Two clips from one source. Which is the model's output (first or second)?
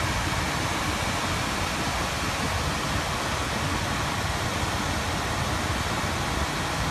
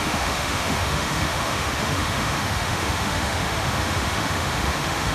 second